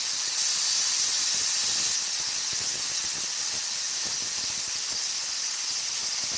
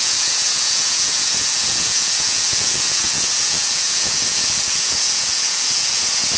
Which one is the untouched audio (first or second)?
first